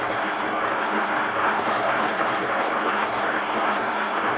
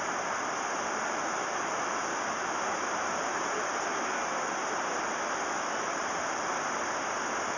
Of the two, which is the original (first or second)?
second